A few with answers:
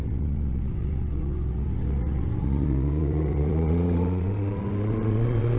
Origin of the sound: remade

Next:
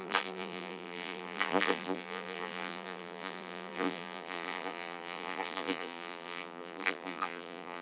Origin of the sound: remade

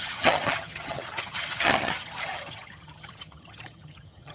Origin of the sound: remade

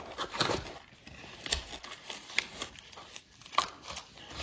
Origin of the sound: recorded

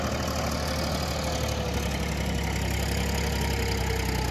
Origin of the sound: recorded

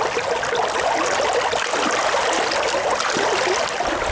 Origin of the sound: recorded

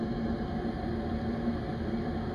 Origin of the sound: recorded